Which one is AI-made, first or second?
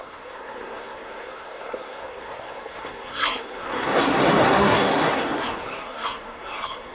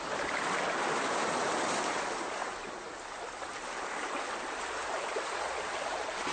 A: first